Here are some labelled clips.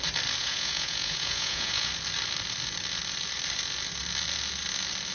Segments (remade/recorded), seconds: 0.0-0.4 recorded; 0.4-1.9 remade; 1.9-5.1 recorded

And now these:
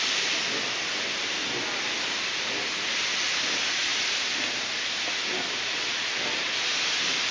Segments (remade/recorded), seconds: 0.0-7.3 recorded